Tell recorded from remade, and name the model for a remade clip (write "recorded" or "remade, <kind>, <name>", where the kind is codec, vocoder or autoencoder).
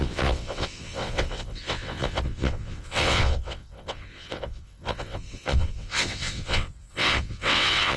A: remade, vocoder, WaveNeXt